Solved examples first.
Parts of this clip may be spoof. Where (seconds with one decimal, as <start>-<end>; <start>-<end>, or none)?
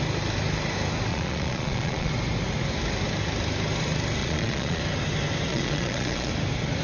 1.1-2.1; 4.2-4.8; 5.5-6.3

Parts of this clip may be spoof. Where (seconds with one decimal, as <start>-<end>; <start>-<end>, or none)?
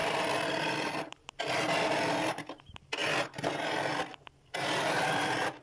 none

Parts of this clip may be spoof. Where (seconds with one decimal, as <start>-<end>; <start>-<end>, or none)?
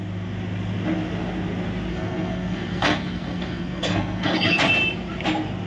1.9-4.6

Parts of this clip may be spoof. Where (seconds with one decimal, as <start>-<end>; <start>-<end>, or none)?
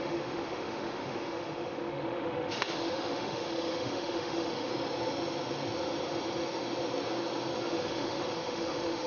0.0-4.7; 7.7-9.1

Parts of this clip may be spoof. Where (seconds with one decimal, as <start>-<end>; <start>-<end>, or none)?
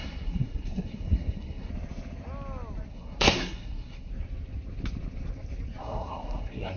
0.0-1.7; 2.9-4.1; 5.8-6.8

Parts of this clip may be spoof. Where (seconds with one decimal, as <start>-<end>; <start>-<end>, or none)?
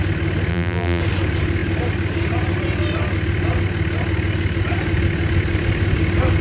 0.5-1.0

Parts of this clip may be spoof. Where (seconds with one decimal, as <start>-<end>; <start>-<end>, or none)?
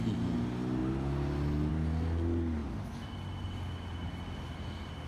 none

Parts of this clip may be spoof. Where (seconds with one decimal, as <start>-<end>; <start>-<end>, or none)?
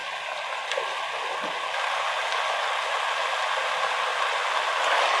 none